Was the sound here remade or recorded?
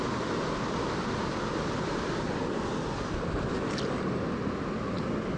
recorded